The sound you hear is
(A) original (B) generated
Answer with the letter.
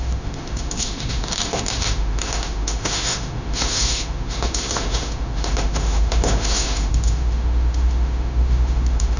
B